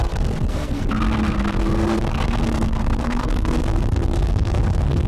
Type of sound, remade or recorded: remade